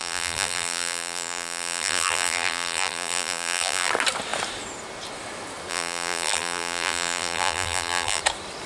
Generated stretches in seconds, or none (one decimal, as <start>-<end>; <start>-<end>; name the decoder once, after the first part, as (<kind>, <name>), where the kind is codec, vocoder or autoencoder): 0.0-3.9 (vocoder, BigVGAN v2); 5.7-8.2